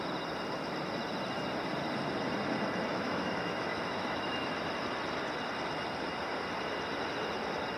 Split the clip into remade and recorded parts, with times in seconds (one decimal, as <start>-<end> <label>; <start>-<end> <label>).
0.0-2.9 recorded; 2.9-4.5 remade; 4.5-7.8 recorded